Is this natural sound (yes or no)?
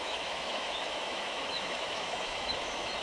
no